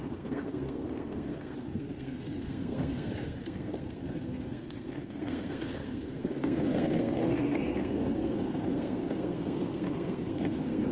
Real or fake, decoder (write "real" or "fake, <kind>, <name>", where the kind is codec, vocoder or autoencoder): fake, codec, SNAC